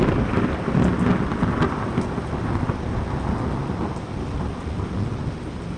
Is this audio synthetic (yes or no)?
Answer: no